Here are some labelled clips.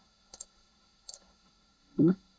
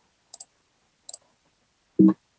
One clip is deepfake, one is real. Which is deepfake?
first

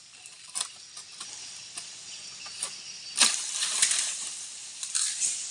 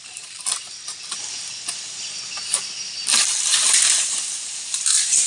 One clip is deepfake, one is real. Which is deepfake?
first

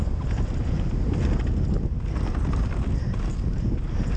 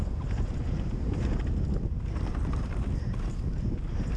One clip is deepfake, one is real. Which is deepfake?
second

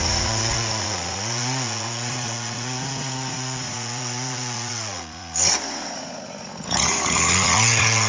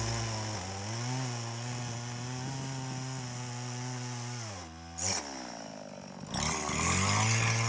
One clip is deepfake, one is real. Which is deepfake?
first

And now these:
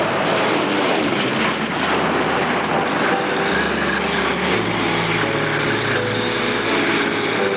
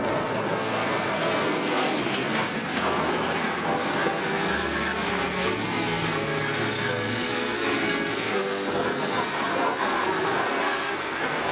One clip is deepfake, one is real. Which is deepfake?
second